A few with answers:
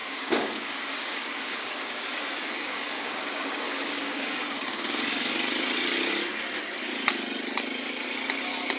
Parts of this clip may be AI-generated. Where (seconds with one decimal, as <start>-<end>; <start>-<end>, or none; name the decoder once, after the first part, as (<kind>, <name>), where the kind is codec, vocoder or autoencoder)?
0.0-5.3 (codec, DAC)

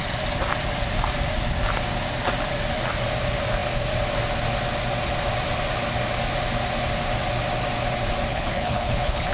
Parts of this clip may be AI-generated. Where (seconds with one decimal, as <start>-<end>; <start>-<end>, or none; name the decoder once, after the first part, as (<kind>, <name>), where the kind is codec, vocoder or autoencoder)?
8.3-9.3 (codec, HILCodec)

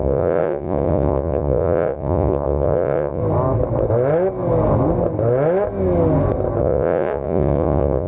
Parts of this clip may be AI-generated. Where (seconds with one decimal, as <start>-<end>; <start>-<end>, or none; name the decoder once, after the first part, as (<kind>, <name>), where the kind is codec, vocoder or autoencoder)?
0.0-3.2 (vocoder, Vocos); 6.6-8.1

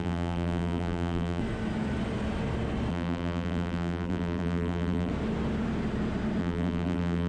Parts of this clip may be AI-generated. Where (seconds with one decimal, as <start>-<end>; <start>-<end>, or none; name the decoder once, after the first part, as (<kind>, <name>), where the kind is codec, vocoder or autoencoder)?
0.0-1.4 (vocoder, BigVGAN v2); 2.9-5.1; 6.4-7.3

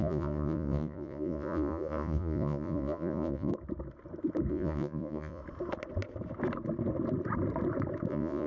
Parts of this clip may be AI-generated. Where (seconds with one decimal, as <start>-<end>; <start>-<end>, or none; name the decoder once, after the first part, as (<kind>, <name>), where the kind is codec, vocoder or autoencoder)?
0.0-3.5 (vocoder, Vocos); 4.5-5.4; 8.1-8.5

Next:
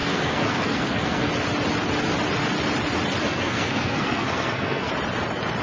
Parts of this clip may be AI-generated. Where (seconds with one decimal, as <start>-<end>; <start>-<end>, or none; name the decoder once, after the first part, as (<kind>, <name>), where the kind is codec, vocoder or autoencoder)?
0.0-1.3 (codec, SNAC); 3.2-4.9

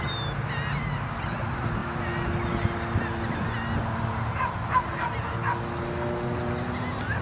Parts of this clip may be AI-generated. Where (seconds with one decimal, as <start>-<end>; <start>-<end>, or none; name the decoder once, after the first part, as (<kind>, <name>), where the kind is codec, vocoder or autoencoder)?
none

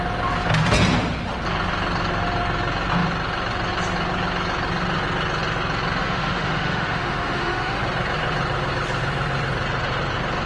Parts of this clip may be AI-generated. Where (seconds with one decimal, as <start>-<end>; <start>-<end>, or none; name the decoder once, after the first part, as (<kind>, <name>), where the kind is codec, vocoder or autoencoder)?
6.0-7.8 (autoencoder, DAC-VAE)